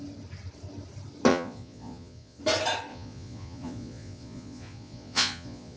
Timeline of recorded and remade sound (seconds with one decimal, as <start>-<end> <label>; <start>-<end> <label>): 0.0-1.3 recorded; 1.3-2.4 remade; 2.4-2.9 recorded; 2.9-5.8 remade